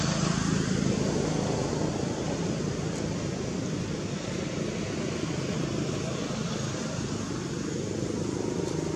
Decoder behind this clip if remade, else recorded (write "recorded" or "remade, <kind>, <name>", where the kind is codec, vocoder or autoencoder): recorded